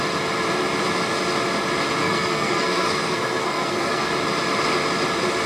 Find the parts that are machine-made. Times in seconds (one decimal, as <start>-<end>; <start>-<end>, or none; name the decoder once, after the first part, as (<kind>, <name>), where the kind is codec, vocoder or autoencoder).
2.0-4.1 (codec, SNAC)

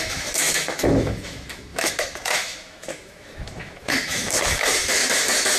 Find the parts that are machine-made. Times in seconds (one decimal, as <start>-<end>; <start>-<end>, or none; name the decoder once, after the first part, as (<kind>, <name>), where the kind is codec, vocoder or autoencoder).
0.0-5.6 (autoencoder, DAC-VAE)

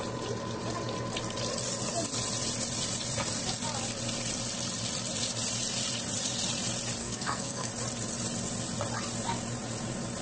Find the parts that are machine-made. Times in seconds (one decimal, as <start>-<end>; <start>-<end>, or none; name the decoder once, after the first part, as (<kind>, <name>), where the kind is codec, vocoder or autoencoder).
7.0-7.7 (codec, SNAC)

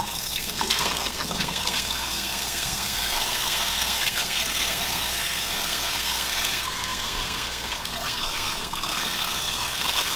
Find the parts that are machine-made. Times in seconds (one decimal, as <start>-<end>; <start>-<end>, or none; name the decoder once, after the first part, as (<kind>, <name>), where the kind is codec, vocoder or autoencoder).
0.0-10.2 (codec, SNAC)

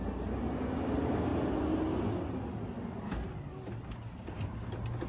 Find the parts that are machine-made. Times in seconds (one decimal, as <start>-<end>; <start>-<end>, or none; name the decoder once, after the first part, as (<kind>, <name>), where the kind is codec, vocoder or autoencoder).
none

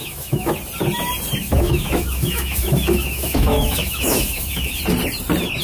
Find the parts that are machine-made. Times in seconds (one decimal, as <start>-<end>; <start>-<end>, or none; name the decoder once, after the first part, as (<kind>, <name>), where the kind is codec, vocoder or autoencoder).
0.0-0.5 (autoencoder, DAC-VAE); 1.4-4.8

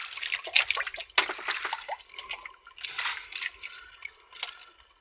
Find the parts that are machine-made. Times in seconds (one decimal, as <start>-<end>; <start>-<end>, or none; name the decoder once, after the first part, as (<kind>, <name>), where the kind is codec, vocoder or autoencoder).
none